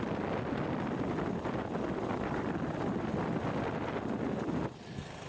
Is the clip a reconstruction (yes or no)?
no